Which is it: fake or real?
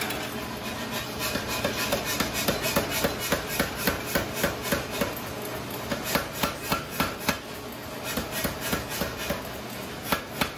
real